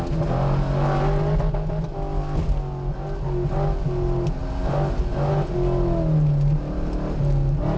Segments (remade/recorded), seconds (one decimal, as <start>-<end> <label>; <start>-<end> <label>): 0.0-7.8 recorded